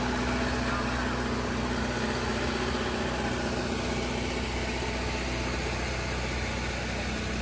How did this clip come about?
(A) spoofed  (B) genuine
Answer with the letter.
B